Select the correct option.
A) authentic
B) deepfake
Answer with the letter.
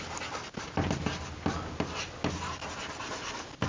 A